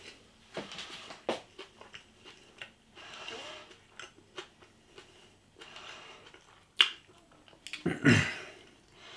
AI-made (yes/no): no